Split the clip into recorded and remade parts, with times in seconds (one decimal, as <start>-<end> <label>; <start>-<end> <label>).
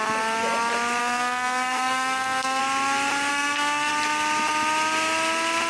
0.0-1.0 recorded; 1.0-2.6 remade; 2.6-3.3 recorded; 3.3-3.9 remade; 3.9-5.7 recorded